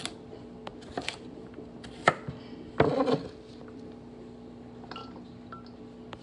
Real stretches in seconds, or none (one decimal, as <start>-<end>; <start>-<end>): 0.0-0.7; 2.1-6.2